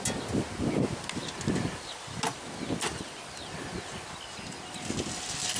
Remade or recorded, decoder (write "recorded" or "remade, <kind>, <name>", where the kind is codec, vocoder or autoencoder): recorded